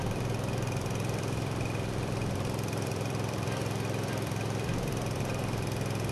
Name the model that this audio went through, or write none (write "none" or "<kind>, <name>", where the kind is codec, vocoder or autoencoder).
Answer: vocoder, BigVGAN v2